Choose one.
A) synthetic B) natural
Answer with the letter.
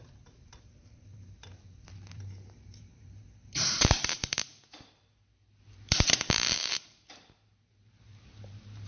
A